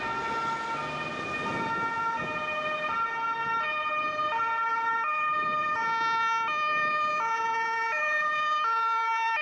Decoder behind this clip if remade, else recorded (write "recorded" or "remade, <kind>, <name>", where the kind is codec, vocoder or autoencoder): recorded